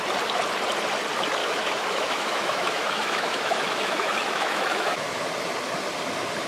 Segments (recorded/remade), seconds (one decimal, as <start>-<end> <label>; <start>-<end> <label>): 0.0-1.4 recorded; 1.4-5.3 remade; 5.3-6.5 recorded